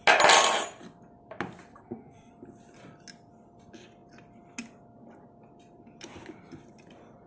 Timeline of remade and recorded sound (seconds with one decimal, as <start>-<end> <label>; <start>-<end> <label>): 0.0-1.7 recorded; 1.7-2.3 remade; 2.3-7.3 recorded